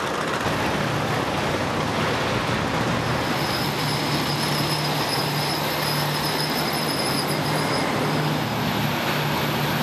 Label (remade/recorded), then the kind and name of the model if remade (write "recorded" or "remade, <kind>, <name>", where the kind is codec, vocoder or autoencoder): recorded